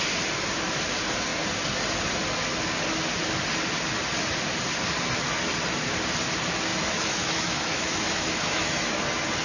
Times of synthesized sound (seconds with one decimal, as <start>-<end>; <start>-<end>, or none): 6.7-8.9